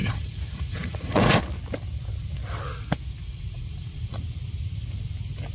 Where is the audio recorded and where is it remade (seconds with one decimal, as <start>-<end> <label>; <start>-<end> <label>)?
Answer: 0.0-1.4 remade; 1.4-3.2 recorded; 3.2-4.2 remade; 4.2-5.5 recorded

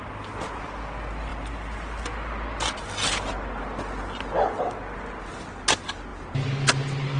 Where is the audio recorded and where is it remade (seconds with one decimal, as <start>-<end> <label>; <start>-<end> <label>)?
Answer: 0.0-7.2 recorded

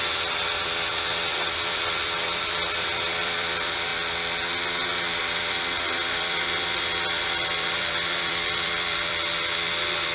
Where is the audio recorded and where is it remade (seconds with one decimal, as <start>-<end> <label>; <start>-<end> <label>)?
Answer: 0.0-3.9 remade; 3.9-5.2 recorded; 5.2-10.1 remade

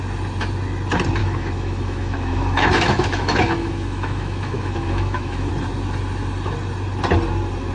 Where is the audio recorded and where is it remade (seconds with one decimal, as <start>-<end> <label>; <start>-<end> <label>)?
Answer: 0.0-1.2 recorded; 1.2-5.5 remade; 5.5-7.7 recorded

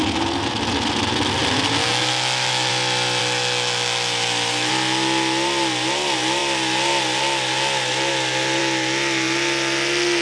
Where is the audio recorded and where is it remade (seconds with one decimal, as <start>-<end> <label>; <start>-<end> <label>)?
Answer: 0.0-1.8 recorded; 1.8-2.7 remade; 2.7-3.2 recorded; 3.2-4.7 remade; 4.7-10.2 recorded